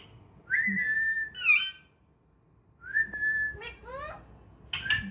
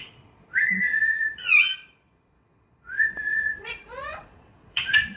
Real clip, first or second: first